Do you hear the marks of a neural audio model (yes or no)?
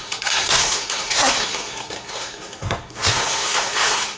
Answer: yes